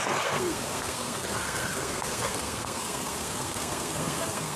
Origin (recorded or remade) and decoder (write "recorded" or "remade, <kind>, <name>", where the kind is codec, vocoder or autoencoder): remade, codec, SNAC